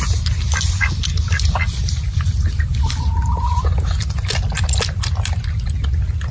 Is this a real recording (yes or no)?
yes